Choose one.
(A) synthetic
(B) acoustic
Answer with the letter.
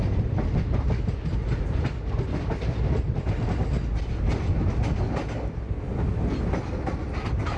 B